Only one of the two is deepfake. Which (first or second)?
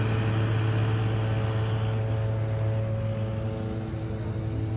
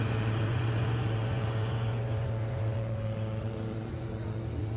second